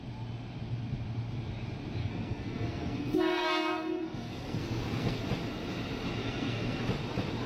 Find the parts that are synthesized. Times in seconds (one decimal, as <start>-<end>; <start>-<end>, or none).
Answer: 2.0-5.2; 6.2-6.8